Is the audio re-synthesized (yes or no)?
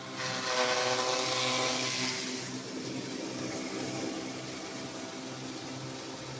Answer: no